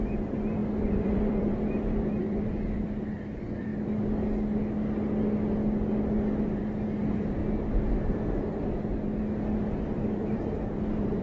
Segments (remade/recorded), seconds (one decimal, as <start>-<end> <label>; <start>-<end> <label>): 0.0-3.7 remade; 3.7-7.0 recorded; 7.0-7.4 remade; 7.4-9.8 recorded; 9.8-11.2 remade